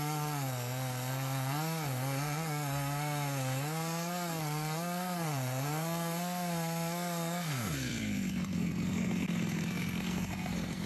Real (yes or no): no